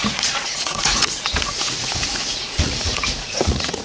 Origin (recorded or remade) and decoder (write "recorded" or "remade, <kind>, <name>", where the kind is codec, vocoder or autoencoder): remade, vocoder, Vocos